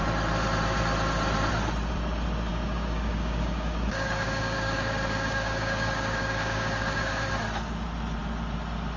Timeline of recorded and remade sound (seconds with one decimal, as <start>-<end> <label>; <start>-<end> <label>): 0.0-2.5 recorded; 2.5-7.3 remade; 7.3-9.0 recorded